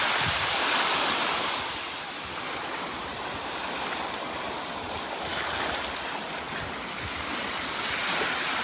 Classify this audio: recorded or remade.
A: recorded